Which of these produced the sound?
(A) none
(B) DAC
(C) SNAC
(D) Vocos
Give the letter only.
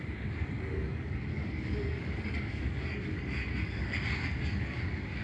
B